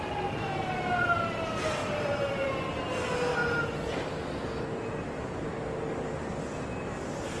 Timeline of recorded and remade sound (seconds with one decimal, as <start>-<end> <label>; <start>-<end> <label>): 0.0-1.8 recorded; 1.8-2.5 remade; 2.5-7.4 recorded